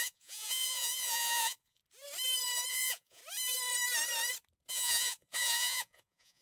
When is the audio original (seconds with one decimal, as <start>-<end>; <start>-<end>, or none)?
1.8-2.7; 3.2-4.7